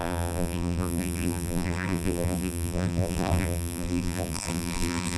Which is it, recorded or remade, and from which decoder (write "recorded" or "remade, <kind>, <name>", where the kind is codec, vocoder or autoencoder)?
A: remade, vocoder, BigVGAN v2